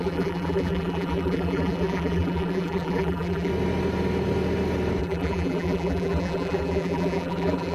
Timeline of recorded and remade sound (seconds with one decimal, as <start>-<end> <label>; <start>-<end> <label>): 0.0-3.5 remade; 3.5-5.0 recorded; 5.0-7.7 remade